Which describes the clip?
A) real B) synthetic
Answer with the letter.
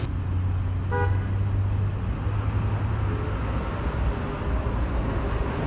A